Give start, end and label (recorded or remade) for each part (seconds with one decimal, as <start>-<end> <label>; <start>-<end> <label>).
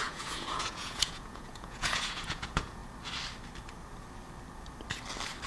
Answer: 0.0-2.8 remade; 2.8-5.5 recorded